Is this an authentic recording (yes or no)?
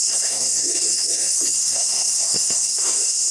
no